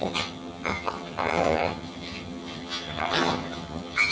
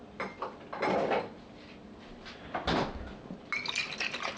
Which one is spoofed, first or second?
first